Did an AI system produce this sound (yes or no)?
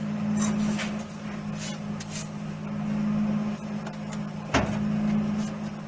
no